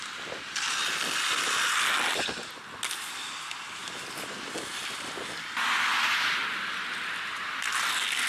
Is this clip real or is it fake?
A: real